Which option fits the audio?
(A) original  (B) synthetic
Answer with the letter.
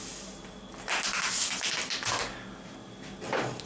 A